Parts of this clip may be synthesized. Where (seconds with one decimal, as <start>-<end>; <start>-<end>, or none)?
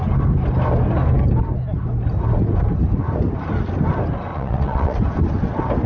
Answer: 4.3-5.0